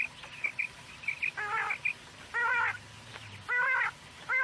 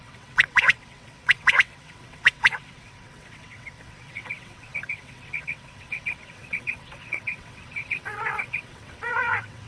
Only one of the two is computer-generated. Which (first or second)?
second